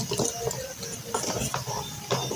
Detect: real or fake real